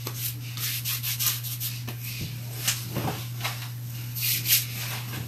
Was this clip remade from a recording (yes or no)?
no